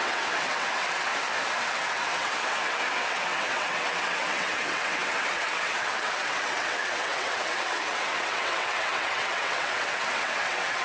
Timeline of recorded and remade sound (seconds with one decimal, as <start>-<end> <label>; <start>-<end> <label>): 0.0-1.1 remade; 1.1-1.6 recorded; 1.6-10.8 remade